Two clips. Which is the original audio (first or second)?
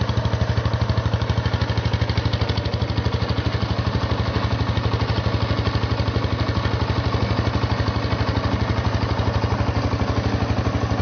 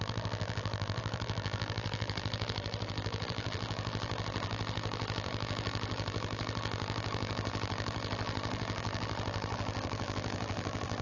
first